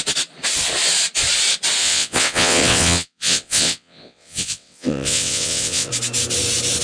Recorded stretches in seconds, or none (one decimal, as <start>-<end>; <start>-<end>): 0.0-1.8; 5.9-6.8